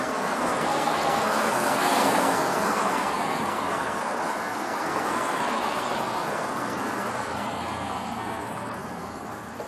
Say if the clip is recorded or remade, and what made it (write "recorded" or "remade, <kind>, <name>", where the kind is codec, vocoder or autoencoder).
remade, codec, SNAC